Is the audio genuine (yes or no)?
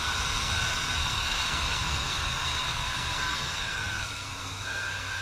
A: no